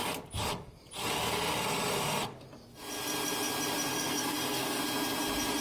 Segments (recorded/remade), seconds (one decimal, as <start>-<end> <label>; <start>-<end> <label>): 0.0-3.9 recorded; 3.9-4.8 remade; 4.8-5.6 recorded